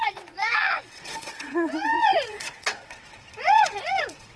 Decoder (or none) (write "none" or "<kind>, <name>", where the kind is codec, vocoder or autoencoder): vocoder, WaveNeXt